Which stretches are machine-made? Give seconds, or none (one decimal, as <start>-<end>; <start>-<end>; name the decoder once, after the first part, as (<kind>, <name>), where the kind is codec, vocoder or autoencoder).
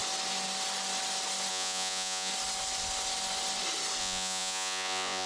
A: 1.5-2.3 (vocoder, Vocos); 4.0-5.3